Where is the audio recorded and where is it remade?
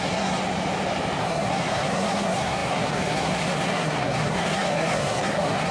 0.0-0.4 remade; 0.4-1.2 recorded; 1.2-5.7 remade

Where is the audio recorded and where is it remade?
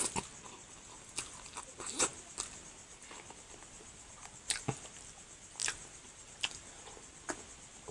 0.0-7.9 recorded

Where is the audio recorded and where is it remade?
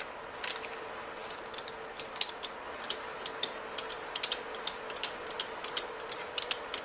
0.0-6.8 recorded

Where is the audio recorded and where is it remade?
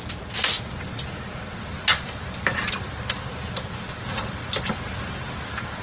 0.0-5.8 recorded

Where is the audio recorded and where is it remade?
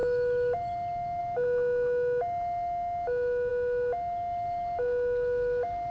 0.0-5.9 recorded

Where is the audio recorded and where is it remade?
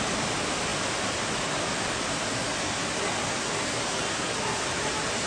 0.0-5.3 recorded